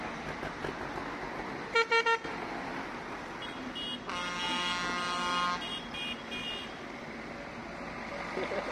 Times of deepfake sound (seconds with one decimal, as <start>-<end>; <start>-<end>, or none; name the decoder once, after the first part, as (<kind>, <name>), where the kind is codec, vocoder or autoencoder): none